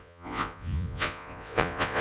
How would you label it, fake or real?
fake